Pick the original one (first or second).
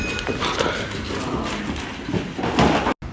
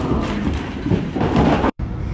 first